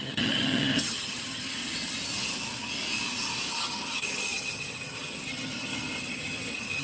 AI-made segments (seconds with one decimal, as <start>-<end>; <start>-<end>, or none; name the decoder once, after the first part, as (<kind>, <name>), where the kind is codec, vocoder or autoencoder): 0.0-1.6 (vocoder, HiFi-GAN); 3.5-6.8